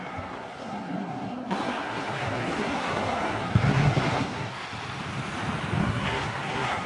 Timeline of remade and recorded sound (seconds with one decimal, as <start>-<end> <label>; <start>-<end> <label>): 0.0-4.6 remade; 4.6-5.8 recorded; 5.8-6.9 remade